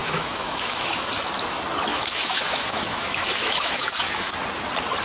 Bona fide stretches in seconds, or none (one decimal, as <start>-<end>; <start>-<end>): 1.1-1.9; 4.3-5.0